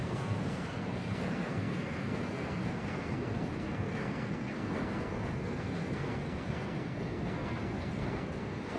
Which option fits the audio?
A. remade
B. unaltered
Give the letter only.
A